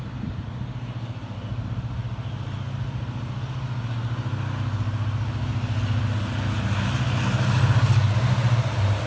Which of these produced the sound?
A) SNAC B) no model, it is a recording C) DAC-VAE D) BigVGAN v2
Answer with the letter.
B